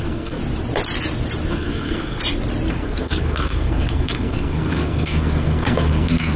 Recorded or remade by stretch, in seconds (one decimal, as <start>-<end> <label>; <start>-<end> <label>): 0.0-0.4 remade; 0.4-1.5 recorded; 1.5-2.2 remade; 2.2-2.7 recorded; 2.7-6.4 remade